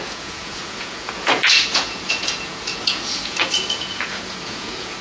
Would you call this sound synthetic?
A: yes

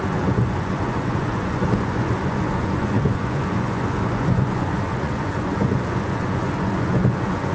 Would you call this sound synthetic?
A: yes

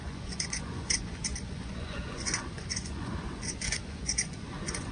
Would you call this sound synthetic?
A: yes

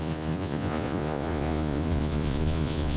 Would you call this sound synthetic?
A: yes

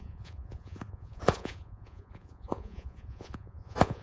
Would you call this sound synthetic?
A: yes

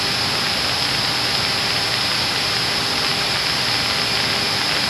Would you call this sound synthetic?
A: no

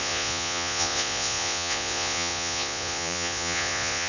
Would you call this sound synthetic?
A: yes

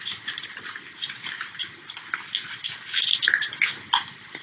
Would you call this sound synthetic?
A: no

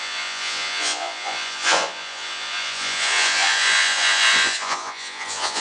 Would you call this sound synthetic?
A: yes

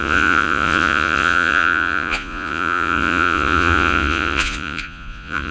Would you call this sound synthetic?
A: yes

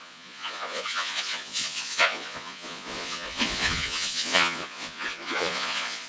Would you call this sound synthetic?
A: yes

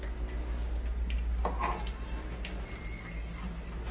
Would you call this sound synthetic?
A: no